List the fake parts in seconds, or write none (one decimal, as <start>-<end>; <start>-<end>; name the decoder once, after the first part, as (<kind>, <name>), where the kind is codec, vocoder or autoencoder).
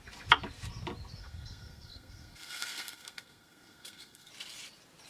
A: 1.2-4.3 (codec, SNAC)